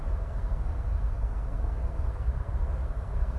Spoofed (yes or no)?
yes